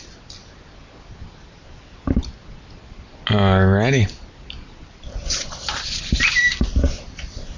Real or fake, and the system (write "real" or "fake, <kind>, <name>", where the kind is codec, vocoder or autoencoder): real